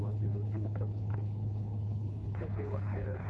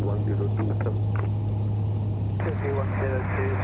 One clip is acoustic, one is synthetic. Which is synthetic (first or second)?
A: first